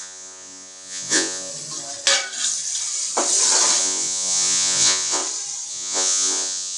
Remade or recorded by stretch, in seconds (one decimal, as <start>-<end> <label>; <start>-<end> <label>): 0.0-1.5 remade; 1.5-3.8 recorded; 3.8-5.2 remade; 5.2-5.7 recorded; 5.7-6.8 remade